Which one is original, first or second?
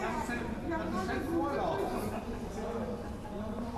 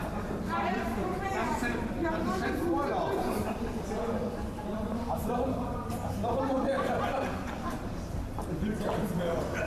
first